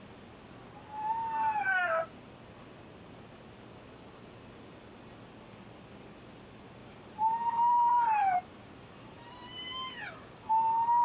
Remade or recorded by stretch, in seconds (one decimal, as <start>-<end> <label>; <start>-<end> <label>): 0.0-6.8 recorded; 6.8-10.5 remade; 10.5-11.0 recorded